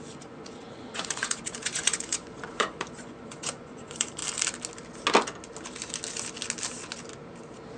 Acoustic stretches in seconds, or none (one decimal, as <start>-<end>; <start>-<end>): 4.2-7.8